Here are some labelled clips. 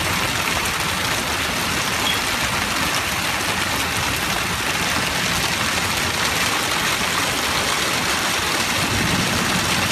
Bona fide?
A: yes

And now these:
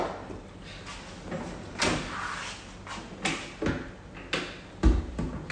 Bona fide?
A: yes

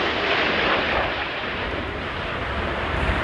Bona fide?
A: yes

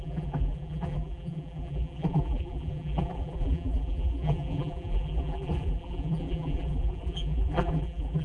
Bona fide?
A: no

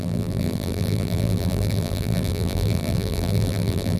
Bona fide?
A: no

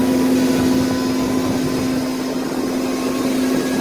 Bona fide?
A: yes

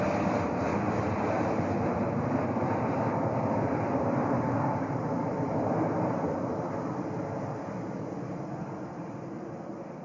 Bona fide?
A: no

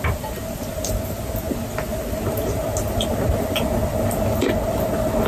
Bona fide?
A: yes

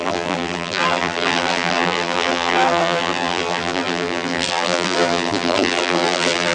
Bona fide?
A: no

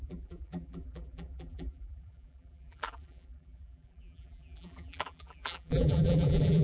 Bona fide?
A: no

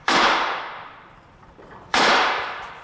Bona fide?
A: no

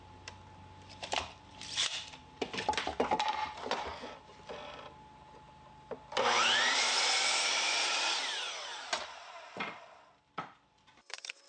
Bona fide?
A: no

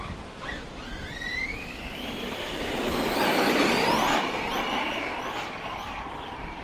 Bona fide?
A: no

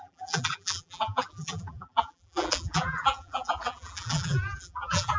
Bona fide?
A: no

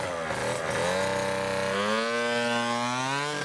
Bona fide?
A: yes